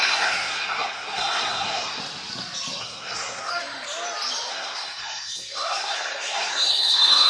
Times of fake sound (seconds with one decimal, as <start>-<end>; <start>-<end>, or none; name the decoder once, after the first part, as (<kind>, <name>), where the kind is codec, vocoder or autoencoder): 0.0-2.0 (codec, SNAC); 2.8-3.5; 4.5-7.3